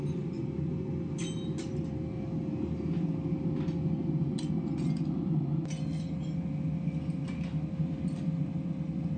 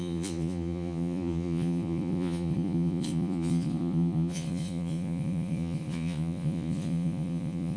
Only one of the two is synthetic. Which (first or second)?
second